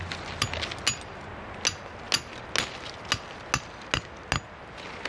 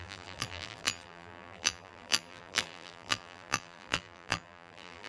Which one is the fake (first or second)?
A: second